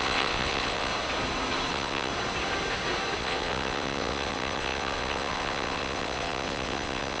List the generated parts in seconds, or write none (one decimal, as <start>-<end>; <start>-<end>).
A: 0.0-0.9; 1.7-2.1; 3.2-7.2